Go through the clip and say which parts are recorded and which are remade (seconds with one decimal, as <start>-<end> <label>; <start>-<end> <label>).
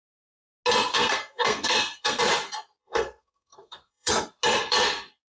0.0-0.9 recorded; 0.9-2.2 remade; 2.2-2.8 recorded; 2.8-4.1 remade; 4.1-5.3 recorded